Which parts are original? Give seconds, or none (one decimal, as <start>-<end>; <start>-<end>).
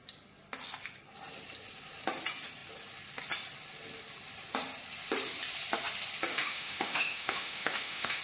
0.0-6.3